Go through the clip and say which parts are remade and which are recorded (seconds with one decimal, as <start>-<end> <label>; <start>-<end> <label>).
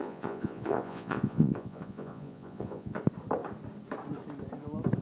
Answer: 0.0-3.0 remade; 3.0-5.0 recorded